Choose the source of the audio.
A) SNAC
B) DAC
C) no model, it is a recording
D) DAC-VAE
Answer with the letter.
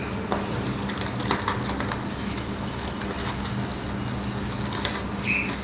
C